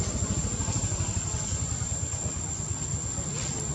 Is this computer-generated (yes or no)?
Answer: no